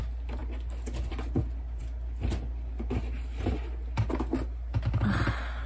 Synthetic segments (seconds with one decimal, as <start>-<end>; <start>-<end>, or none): none